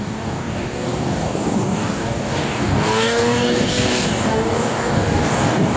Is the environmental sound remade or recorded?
remade